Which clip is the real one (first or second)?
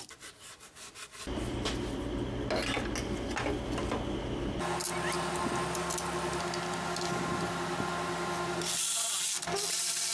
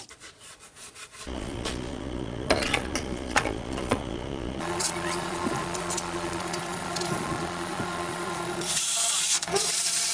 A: first